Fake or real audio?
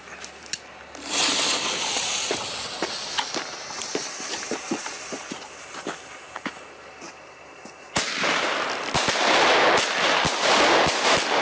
real